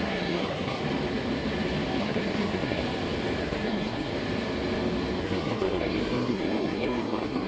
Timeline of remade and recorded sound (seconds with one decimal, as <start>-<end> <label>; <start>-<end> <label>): 0.0-0.8 remade; 0.8-2.0 recorded; 2.0-2.8 remade; 2.8-3.4 recorded; 3.4-4.1 remade; 4.1-5.2 recorded; 5.2-7.5 remade